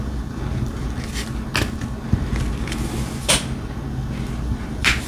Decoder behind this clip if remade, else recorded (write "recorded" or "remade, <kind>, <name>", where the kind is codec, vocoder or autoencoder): recorded